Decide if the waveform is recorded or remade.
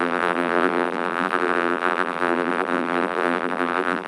remade